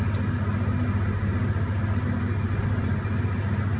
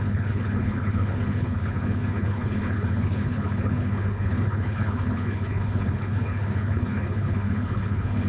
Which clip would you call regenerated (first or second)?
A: second